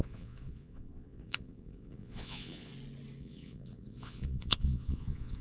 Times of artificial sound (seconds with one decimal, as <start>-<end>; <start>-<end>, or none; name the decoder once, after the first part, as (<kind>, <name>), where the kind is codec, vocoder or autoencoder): 0.0-2.7 (vocoder, Vocos); 3.2-5.4